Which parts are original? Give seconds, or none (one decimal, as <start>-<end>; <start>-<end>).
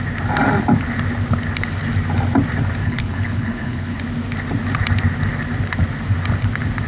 0.0-2.8; 4.0-6.9